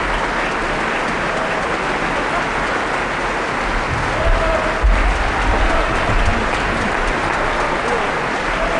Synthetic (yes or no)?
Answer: no